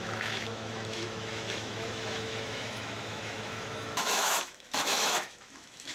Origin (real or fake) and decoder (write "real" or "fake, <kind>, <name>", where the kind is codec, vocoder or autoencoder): fake, autoencoder, DAC-VAE